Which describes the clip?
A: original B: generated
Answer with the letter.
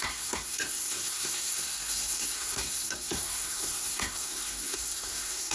B